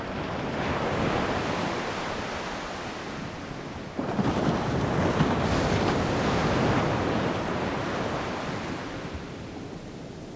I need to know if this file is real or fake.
real